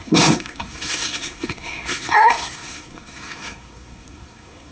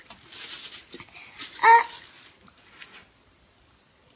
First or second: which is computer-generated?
first